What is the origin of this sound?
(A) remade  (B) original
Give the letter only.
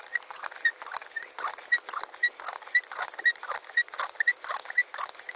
B